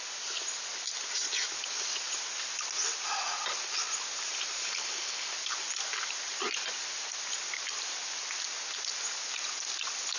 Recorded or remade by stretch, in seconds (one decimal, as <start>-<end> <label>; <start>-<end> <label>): 0.0-4.6 recorded; 4.6-5.3 remade; 5.3-10.2 recorded